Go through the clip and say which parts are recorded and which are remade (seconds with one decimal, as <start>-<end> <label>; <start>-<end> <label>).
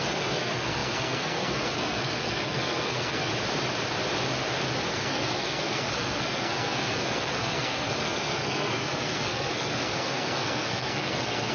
0.0-3.3 remade; 3.3-4.9 recorded; 4.9-11.5 remade